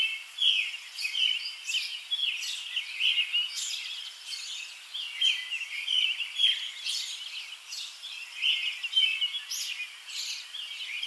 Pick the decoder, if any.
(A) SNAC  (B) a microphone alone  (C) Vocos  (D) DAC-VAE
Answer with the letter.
B